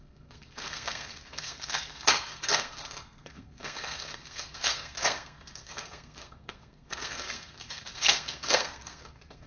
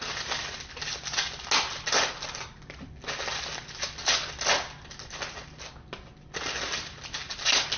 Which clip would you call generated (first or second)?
first